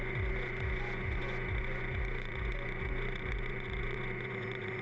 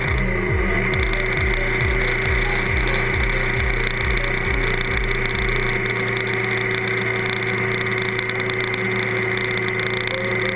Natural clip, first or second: second